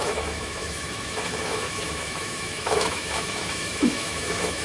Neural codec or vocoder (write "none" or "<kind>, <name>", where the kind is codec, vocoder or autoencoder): autoencoder, DAC-VAE